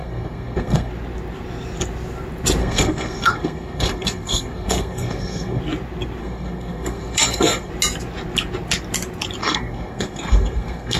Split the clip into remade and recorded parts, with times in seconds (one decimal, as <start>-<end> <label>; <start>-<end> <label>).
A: 0.0-0.9 remade; 0.9-2.6 recorded; 2.6-5.6 remade; 5.6-6.2 recorded; 6.2-7.7 remade; 7.7-9.4 recorded; 9.4-11.0 remade